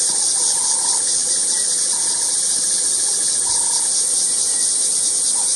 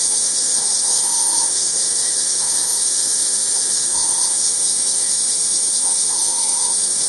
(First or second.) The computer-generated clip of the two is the second